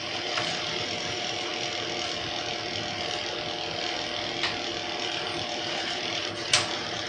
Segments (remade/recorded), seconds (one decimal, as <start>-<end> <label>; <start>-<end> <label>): 0.0-1.5 remade; 1.5-5.1 recorded; 5.1-7.1 remade